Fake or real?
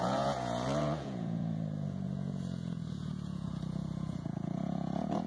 fake